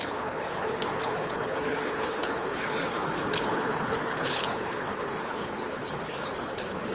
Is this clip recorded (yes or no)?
no